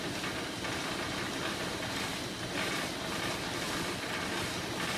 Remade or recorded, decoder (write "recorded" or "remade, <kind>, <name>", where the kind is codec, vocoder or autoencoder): recorded